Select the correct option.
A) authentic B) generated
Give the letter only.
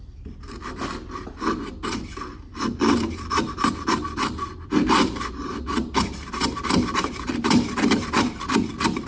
B